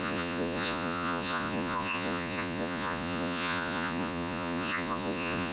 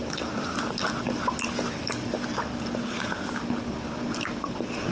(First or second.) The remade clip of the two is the first